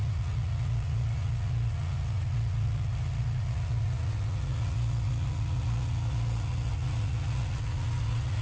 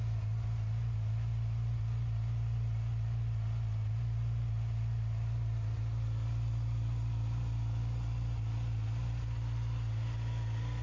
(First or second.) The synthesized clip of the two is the first